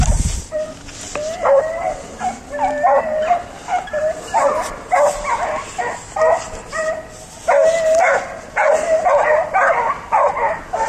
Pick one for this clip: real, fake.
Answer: real